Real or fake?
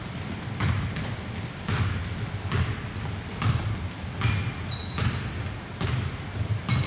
real